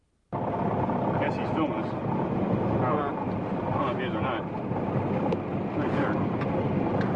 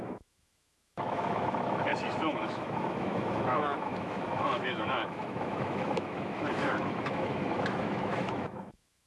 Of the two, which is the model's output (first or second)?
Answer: second